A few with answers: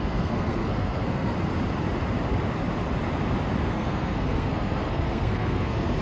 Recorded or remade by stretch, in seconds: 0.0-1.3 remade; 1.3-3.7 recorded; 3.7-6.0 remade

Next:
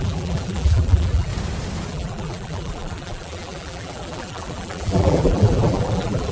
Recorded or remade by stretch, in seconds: 0.0-1.3 remade; 1.3-1.9 recorded; 1.9-6.3 remade

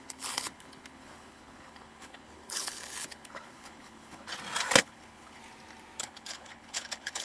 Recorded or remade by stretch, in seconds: 0.0-4.3 remade; 4.3-4.8 recorded; 4.8-5.4 remade; 5.4-6.0 recorded; 6.0-7.2 remade

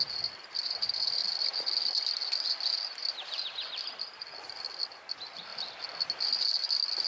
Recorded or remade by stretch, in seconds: 0.0-7.1 recorded

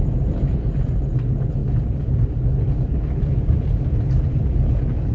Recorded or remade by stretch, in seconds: 0.0-5.1 recorded

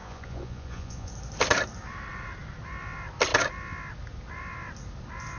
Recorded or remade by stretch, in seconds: 0.0-1.1 remade; 1.1-5.4 recorded